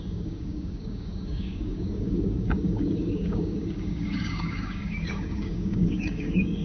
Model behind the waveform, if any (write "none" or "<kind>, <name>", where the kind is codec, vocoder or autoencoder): codec, DAC